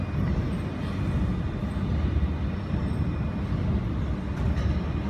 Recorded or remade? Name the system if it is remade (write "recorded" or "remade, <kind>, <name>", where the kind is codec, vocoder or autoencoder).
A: remade, vocoder, BigVGAN v2